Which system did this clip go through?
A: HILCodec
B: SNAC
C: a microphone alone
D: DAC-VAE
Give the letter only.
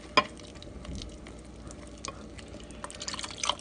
C